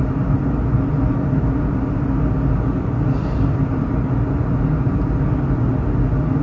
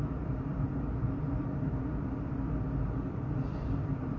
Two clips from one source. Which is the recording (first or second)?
first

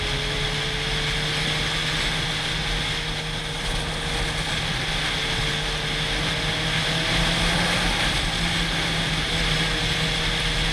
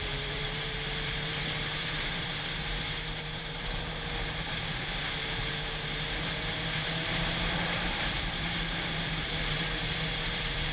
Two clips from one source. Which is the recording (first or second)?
first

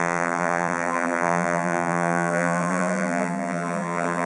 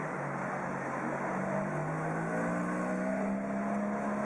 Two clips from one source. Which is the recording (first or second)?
second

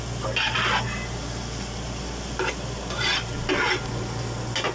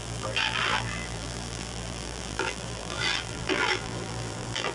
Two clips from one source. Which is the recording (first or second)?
first